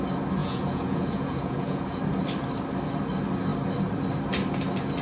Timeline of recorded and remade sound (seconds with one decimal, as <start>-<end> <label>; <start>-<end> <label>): 0.0-0.4 recorded; 0.4-2.0 remade; 2.0-5.0 recorded